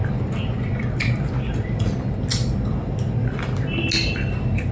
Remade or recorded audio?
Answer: recorded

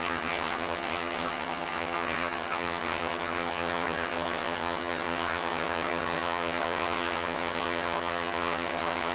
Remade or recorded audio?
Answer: remade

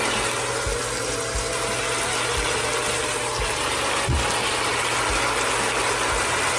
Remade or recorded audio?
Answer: recorded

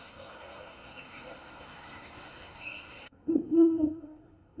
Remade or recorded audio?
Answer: remade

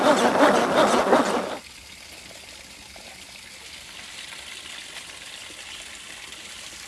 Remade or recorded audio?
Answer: recorded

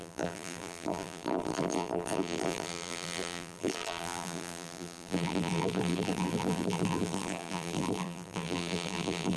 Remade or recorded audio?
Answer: remade